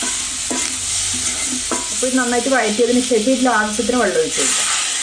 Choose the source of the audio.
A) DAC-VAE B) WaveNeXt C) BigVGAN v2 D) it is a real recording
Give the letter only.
D